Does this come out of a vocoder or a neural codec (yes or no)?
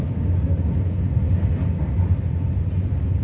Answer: no